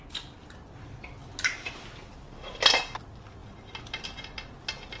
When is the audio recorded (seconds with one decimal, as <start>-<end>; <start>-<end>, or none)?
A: 0.0-5.0